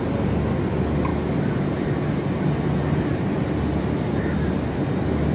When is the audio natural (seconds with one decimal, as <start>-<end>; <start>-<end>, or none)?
0.0-5.3